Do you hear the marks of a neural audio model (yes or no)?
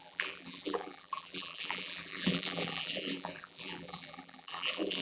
yes